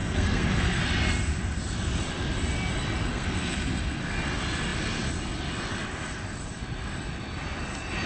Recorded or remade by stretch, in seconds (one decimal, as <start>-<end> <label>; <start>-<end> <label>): 0.0-0.8 remade; 0.8-3.1 recorded; 3.1-4.0 remade; 4.0-8.1 recorded